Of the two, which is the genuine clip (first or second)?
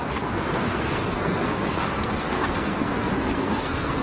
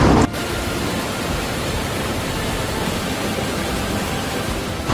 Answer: second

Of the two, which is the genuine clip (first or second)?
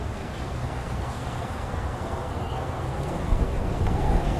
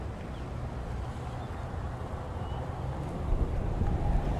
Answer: second